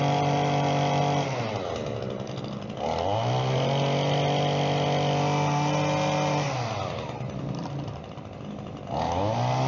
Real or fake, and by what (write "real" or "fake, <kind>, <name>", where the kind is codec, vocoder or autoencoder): real